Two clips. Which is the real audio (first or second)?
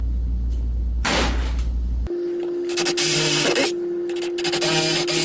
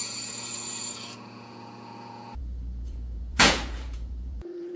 first